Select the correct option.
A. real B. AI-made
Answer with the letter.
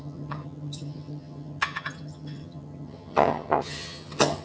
B